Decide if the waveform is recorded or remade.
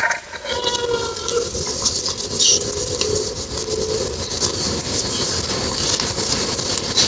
recorded